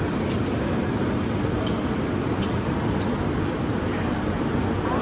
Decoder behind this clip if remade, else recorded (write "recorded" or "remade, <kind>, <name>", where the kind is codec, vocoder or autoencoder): recorded